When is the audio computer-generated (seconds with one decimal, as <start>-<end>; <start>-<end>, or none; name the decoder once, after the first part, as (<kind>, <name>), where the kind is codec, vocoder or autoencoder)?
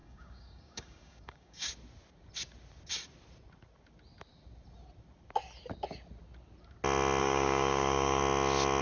0.0-1.7 (codec, DAC); 7.2-8.2